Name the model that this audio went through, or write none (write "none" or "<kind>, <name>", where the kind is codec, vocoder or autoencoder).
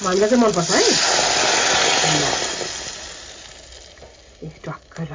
none